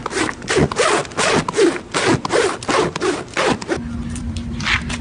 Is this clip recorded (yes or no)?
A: no